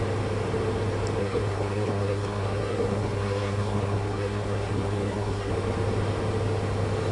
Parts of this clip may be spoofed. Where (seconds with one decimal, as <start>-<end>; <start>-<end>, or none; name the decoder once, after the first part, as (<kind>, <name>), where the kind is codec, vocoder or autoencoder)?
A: 1.2-5.5 (codec, SNAC)